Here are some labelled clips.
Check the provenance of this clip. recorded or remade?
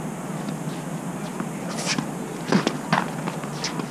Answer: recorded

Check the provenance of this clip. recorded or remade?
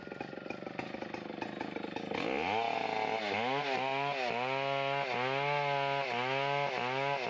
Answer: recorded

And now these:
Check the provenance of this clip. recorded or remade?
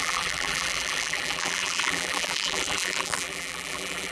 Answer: remade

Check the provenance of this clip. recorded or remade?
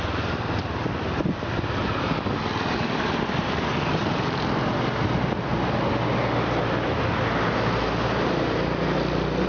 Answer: recorded